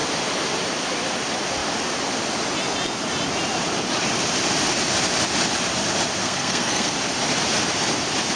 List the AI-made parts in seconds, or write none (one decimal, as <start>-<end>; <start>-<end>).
6.2-6.9